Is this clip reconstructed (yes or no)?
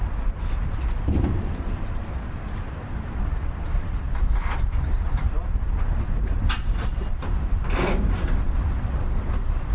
yes